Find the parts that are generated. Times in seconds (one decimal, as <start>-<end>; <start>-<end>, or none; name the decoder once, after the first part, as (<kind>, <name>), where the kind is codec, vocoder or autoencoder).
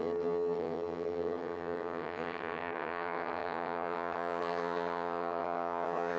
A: 0.0-6.2 (vocoder, HiFi-GAN)